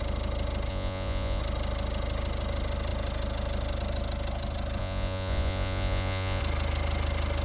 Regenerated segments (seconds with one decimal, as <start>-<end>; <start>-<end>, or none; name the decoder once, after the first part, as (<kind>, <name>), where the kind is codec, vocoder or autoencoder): 0.7-1.4 (vocoder, Vocos); 4.8-6.4

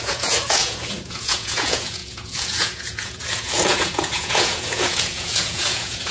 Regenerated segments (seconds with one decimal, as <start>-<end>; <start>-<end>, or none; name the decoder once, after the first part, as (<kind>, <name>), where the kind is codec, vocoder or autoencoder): 0.0-6.1 (vocoder, Vocos)

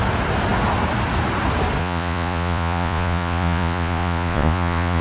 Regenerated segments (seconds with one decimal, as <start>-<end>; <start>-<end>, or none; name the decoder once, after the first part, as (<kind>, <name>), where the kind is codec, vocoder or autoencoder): 1.8-5.0 (vocoder, Vocos)

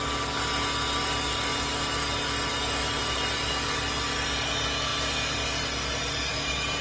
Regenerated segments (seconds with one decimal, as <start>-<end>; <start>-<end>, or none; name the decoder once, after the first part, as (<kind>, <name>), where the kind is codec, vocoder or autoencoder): none

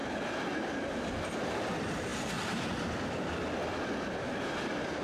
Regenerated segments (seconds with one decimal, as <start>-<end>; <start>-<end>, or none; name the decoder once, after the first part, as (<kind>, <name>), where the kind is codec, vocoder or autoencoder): none